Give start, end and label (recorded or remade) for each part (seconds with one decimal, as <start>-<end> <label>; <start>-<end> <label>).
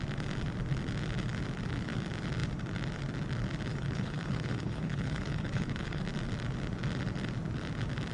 0.0-3.7 recorded; 3.7-6.0 remade; 6.0-8.1 recorded